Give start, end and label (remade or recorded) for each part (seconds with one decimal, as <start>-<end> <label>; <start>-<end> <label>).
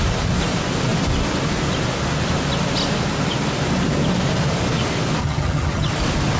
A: 0.0-5.2 recorded; 5.2-5.9 remade; 5.9-6.4 recorded